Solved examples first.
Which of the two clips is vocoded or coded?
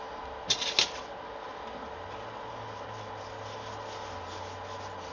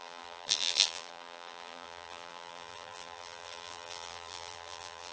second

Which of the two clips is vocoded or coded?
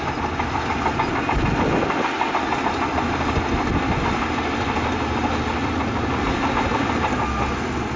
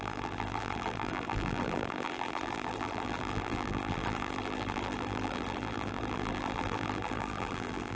second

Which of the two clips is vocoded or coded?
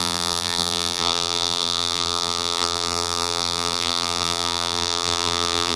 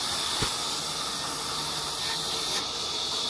first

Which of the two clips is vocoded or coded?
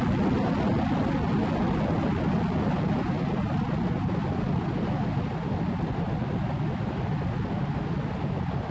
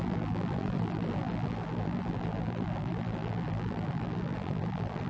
second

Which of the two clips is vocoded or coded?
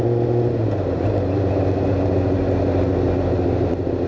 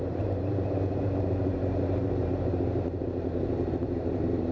second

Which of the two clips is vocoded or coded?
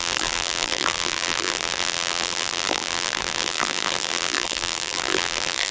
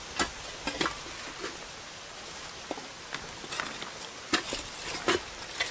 first